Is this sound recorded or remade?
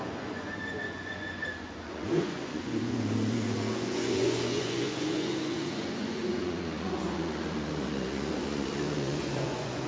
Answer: remade